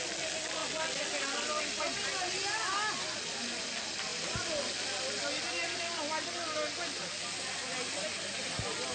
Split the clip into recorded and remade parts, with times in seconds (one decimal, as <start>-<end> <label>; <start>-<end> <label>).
0.0-8.9 recorded